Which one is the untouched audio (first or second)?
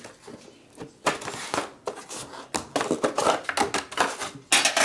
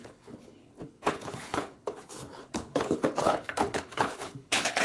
first